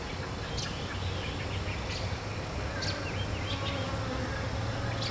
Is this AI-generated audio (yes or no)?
no